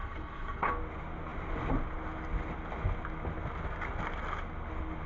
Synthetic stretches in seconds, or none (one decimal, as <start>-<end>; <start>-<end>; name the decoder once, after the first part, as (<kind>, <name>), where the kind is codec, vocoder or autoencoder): 0.0-0.7 (codec, HILCodec)